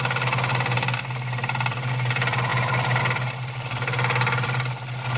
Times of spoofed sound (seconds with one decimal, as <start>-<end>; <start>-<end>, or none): none